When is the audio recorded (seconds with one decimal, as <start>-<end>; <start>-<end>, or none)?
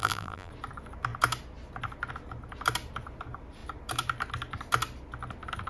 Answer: 0.5-5.7